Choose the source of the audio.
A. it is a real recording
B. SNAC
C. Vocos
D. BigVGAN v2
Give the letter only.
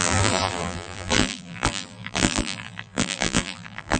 D